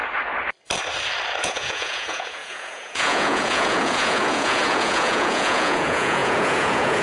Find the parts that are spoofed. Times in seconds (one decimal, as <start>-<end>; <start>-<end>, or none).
1.4-7.0